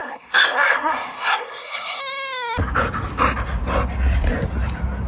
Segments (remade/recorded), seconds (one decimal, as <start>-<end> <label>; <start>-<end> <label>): 0.0-2.0 remade; 2.0-5.1 recorded